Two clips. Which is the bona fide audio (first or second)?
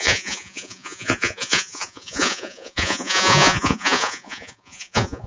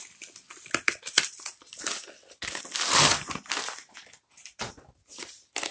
second